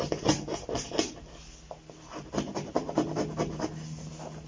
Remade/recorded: recorded